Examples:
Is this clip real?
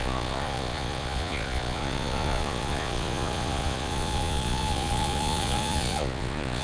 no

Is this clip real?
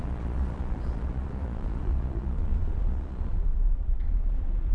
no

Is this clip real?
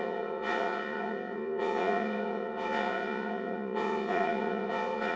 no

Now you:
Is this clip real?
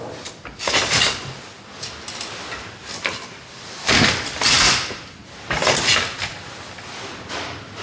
yes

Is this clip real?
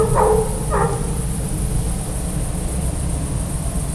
yes